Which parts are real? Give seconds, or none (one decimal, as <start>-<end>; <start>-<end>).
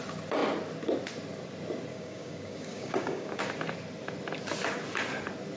0.0-1.9; 3.4-5.6